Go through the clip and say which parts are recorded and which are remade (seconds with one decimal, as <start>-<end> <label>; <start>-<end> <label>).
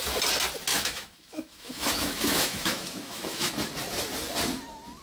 0.0-0.7 recorded; 0.7-3.5 remade; 3.5-5.0 recorded